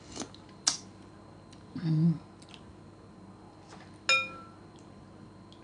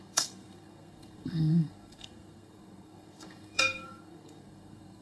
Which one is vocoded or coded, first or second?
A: second